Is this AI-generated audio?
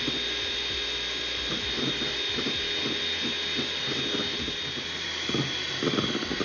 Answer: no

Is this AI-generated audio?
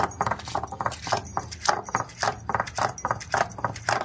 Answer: no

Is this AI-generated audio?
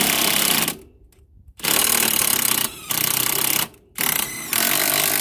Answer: no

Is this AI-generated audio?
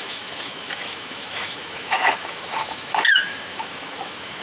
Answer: yes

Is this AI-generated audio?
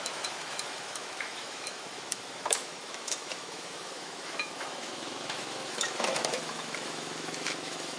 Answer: yes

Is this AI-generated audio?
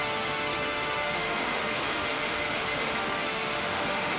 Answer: yes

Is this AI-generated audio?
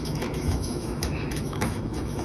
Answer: yes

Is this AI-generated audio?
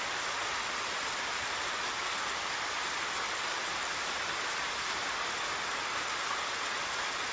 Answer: no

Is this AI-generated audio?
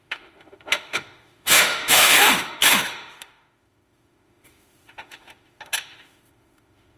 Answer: yes